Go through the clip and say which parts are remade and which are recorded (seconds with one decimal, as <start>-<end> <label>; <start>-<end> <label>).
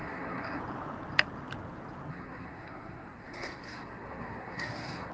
0.0-0.6 remade; 0.6-2.1 recorded; 2.1-5.1 remade